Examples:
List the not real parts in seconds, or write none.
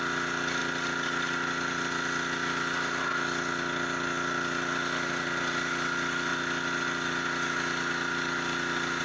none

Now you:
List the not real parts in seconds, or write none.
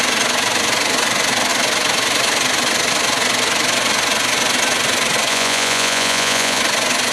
5.3-6.6 (vocoder, Vocos)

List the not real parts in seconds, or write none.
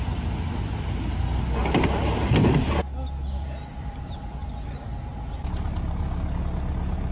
none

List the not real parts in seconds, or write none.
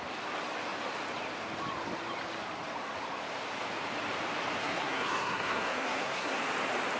4.6-6.4 (codec, SNAC)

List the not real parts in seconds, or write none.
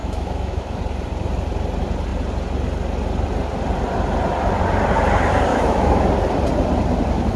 0.0-0.8 (autoencoder, DAC-VAE); 5.5-6.0